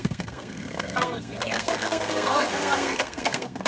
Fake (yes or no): yes